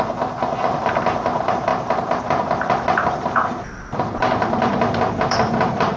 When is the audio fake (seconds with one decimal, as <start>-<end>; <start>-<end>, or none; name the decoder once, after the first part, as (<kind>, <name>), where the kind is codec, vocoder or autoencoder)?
0.0-1.7 (vocoder, BigVGAN v2); 5.3-6.0